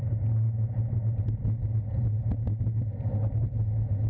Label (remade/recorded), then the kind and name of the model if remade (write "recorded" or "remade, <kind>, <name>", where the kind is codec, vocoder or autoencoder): recorded